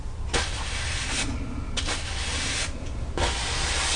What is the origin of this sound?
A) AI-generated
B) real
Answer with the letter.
B